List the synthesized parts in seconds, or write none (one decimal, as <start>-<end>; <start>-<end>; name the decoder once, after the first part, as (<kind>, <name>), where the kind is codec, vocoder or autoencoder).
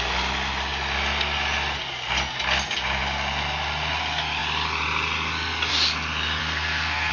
6.4-7.1 (codec, SNAC)